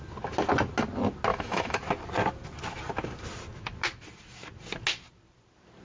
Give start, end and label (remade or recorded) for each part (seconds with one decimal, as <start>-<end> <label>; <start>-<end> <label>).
0.0-1.3 recorded; 1.3-1.8 remade; 1.8-5.8 recorded